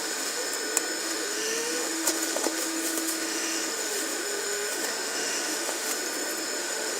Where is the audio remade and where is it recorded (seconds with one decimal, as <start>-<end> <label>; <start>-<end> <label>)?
0.0-0.4 remade; 0.4-1.0 recorded; 1.0-5.9 remade; 5.9-6.6 recorded; 6.6-7.0 remade